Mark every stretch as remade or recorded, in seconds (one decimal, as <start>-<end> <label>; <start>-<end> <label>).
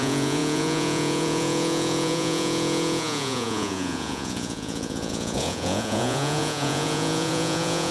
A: 0.0-7.9 remade